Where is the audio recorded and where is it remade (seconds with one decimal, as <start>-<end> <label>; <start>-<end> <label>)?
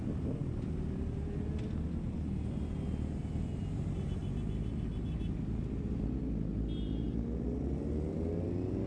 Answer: 0.0-8.9 recorded